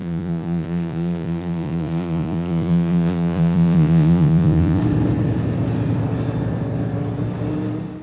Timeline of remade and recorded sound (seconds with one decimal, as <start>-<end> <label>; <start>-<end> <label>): 0.0-4.8 remade; 4.8-8.0 recorded